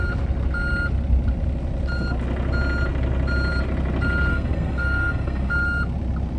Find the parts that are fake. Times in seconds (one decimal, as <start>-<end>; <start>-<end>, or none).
4.3-5.5